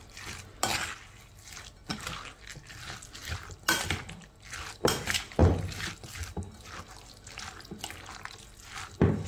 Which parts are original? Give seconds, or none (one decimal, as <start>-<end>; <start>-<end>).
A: 0.0-9.3